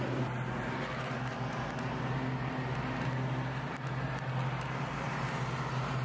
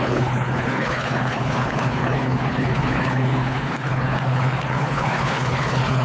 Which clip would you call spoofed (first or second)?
second